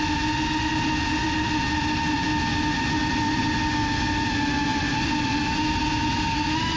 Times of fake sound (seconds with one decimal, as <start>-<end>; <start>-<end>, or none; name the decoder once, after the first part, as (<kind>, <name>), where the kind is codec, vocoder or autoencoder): 1.2-3.4 (vocoder, BigVGAN v2); 4.7-5.4